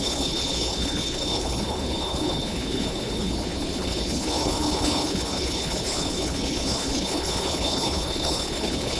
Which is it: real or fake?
fake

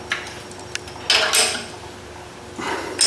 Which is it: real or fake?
real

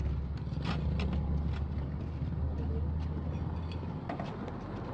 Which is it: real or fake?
real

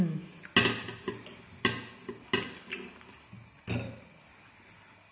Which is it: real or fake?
real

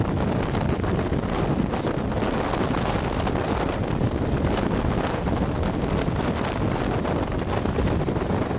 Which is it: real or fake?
real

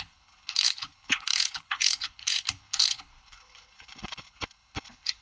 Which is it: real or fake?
fake